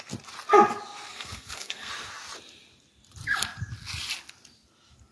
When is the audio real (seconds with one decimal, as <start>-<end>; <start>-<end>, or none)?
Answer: 0.0-1.1; 1.9-5.1